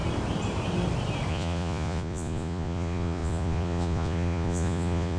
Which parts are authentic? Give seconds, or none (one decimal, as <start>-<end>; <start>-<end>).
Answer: 0.0-1.3